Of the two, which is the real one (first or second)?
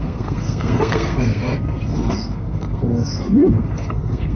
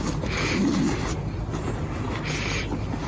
second